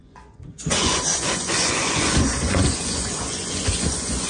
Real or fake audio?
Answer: fake